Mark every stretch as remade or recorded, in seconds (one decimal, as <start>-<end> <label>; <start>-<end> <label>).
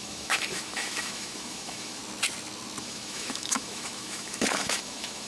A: 0.0-2.0 remade; 2.0-2.8 recorded; 2.8-5.3 remade